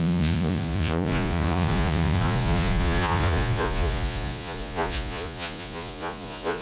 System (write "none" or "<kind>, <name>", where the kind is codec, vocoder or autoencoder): vocoder, Vocos